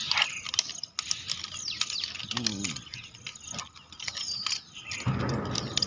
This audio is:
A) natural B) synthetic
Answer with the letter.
A